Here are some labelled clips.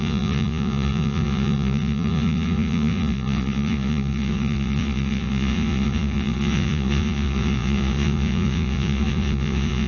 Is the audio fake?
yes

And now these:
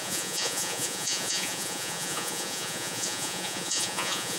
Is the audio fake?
yes